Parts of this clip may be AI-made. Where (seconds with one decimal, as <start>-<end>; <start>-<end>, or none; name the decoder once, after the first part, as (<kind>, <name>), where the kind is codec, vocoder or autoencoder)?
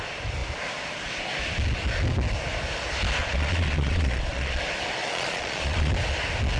3.2-4.6 (vocoder, Vocos); 5.0-5.9